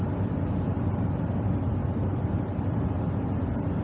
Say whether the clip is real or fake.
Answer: real